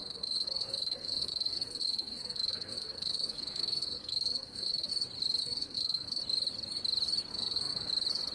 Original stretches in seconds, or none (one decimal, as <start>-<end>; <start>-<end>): 4.9-5.4; 6.2-7.3; 7.9-8.3